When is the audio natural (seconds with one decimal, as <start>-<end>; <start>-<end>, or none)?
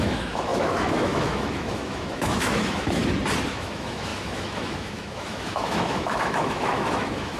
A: 3.0-3.5